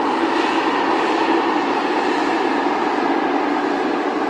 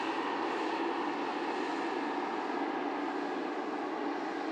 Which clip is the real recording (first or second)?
second